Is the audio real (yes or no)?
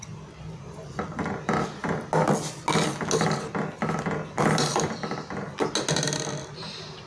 yes